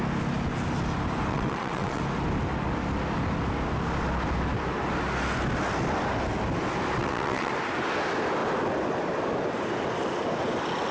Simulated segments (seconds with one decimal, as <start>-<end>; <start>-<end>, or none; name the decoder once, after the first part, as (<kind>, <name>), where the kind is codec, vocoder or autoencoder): 1.3-2.0 (vocoder, WaveNeXt); 7.0-7.5